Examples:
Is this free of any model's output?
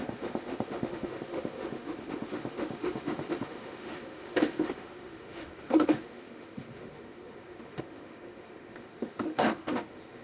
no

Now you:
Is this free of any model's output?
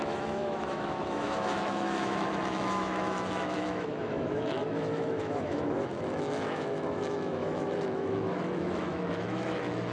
no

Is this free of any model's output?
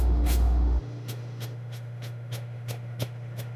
no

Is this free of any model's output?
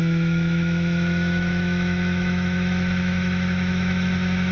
no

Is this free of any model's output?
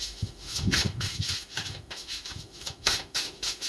no